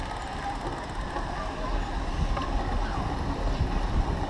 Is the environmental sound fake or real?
real